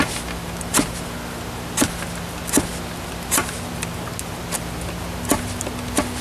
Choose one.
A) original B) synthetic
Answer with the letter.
A